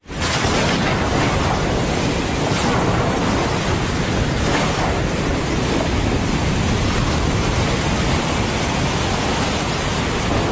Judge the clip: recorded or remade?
recorded